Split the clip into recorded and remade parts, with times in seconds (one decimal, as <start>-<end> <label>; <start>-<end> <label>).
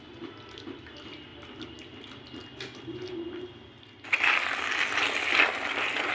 0.0-6.1 recorded